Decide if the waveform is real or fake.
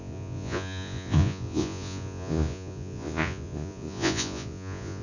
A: fake